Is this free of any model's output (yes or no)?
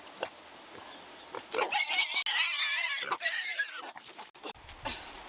yes